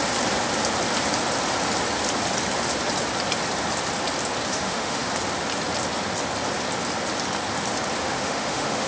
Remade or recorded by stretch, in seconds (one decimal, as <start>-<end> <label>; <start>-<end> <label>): 0.0-4.5 recorded; 4.5-5.1 remade; 5.1-8.0 recorded; 8.0-8.9 remade